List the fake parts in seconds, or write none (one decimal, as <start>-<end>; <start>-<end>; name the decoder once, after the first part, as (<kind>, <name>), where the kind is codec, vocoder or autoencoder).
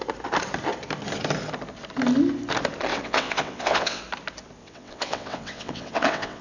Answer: 2.9-4.0 (vocoder, WaveNeXt); 4.6-6.4